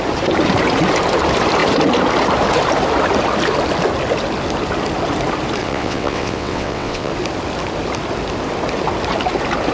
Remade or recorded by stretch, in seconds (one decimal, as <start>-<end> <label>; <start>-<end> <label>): 0.0-5.6 recorded; 5.6-7.1 remade; 7.1-9.7 recorded